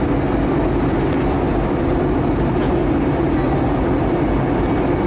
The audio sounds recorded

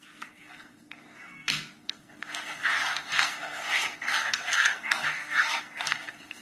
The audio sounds remade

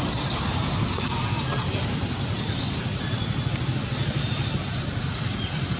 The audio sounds recorded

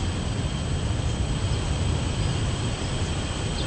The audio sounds recorded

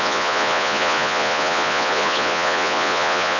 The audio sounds remade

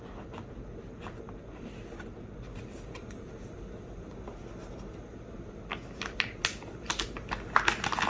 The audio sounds recorded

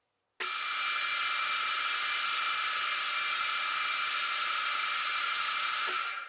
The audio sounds recorded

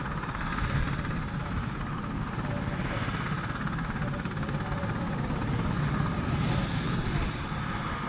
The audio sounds recorded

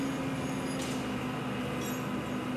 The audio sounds recorded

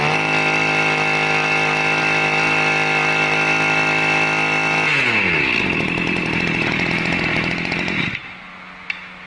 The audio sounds recorded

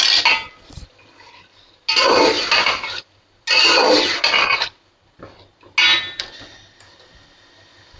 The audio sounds recorded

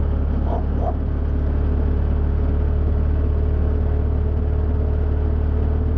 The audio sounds recorded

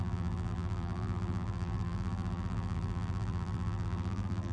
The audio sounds remade